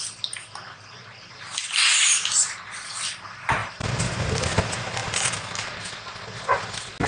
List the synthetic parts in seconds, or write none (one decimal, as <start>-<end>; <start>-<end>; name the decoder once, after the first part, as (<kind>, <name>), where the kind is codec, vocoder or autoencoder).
3.6-4.3 (vocoder, BigVGAN v2); 5.0-5.9